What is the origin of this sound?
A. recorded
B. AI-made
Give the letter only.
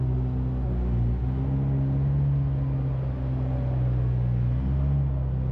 A